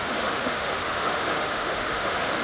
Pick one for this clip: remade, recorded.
remade